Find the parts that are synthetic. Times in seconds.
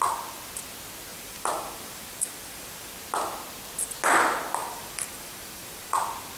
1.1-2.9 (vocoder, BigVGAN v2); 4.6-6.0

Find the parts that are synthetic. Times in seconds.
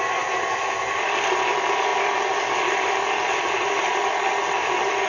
none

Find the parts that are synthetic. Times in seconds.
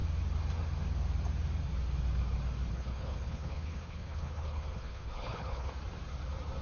2.7-5.7 (codec, HILCodec)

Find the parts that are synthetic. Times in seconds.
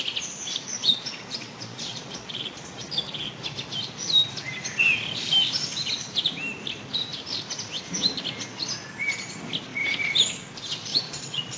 0.8-2.9 (vocoder, Vocos); 10.9-11.6